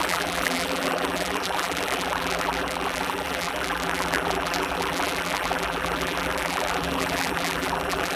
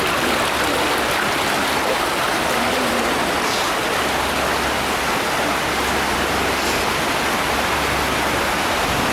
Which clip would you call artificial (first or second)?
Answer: first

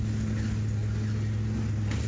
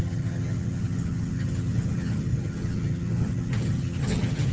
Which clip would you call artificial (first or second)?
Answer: second